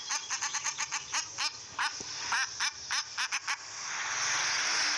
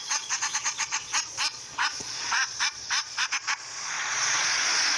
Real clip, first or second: first